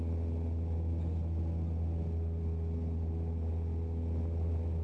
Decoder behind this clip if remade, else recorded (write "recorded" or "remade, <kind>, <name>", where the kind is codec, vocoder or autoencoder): recorded